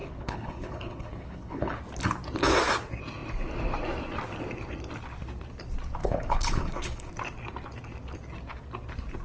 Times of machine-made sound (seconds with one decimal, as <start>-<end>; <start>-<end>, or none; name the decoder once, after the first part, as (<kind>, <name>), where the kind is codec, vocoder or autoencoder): 0.0-1.8 (codec, HILCodec); 6.0-7.1